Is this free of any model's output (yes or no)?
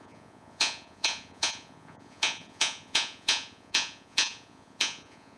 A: no